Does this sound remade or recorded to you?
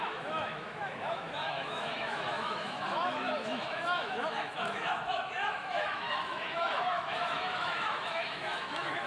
remade